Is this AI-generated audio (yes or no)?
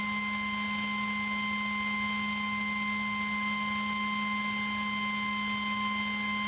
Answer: no